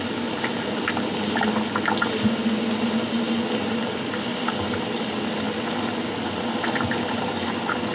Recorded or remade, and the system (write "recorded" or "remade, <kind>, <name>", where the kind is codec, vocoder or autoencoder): recorded